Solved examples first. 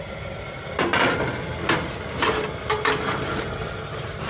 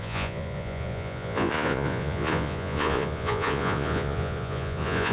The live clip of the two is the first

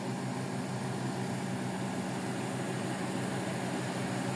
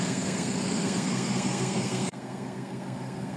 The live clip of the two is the first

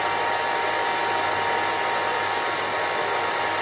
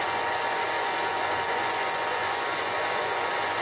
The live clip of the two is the first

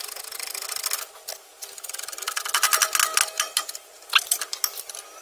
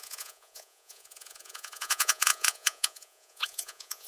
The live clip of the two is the first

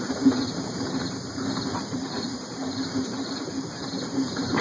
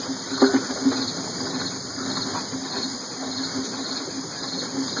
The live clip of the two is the second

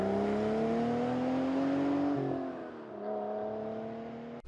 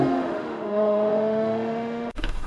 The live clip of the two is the first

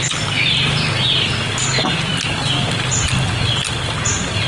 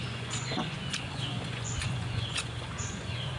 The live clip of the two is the first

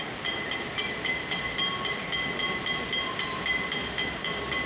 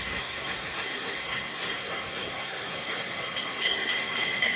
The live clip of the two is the first